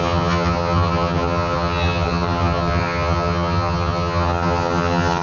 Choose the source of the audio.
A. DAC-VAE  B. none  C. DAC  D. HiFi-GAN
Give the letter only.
D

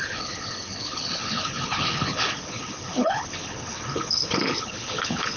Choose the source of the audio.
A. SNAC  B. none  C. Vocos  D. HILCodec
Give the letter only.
D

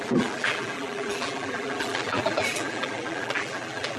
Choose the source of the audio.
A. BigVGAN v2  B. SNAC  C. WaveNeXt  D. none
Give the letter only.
A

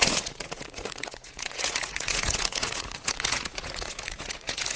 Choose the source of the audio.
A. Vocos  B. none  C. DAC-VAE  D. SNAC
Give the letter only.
A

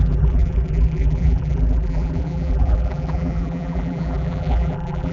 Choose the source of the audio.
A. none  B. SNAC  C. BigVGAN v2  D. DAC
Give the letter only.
C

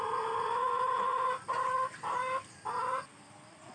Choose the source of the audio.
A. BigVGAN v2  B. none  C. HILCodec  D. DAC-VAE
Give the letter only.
B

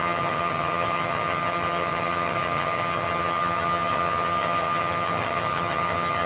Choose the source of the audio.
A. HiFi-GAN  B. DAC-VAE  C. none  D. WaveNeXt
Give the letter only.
A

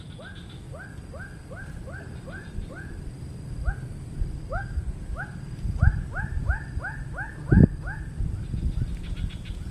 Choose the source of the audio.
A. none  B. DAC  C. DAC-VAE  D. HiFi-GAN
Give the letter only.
A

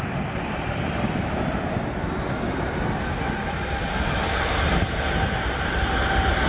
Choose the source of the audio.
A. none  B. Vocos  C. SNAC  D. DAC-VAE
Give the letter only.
A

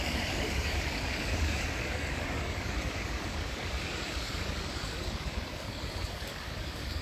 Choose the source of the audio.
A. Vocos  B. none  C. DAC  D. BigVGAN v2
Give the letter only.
C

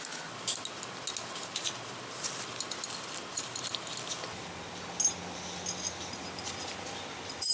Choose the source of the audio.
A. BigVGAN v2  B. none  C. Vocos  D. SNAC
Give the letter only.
B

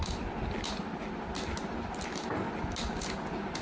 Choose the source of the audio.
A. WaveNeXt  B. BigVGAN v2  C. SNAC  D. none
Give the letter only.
D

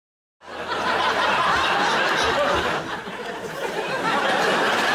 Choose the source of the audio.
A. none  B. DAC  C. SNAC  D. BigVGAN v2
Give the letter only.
A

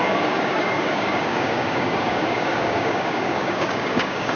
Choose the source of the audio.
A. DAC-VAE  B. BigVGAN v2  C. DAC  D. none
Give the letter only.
C